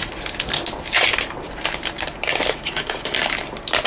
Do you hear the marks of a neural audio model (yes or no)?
no